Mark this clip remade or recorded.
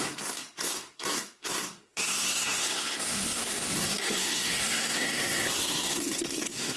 remade